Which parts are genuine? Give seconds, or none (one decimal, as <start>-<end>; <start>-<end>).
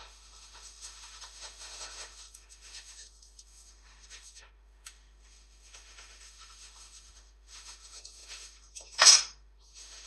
none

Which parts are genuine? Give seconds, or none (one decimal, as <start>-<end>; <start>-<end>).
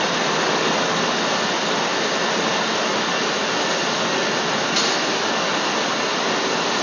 0.0-6.8